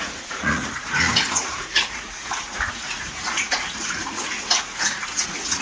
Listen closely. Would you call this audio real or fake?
fake